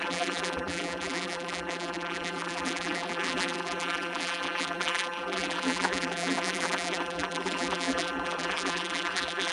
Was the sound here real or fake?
fake